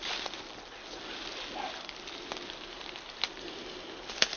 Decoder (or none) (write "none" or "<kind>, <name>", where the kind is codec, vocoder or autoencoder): none